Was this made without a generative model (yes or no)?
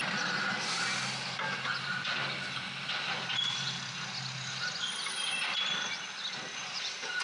yes